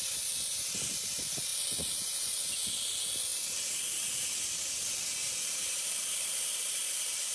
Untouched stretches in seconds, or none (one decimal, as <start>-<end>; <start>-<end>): 1.5-2.5; 3.3-5.4